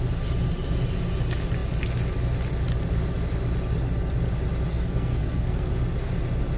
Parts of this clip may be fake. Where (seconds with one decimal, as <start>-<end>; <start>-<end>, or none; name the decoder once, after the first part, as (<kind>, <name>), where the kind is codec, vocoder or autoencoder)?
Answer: 4.7-5.7 (codec, SNAC)